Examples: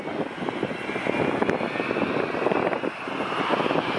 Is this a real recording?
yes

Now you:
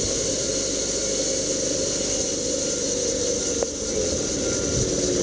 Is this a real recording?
yes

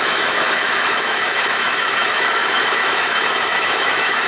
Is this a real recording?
no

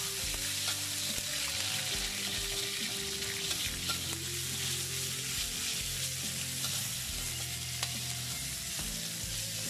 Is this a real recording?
yes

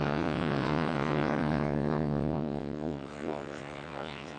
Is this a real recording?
no